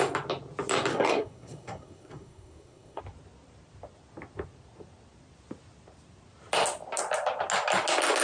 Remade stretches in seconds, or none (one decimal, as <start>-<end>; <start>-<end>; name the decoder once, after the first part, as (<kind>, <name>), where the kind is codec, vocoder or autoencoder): 0.9-3.0 (codec, SNAC)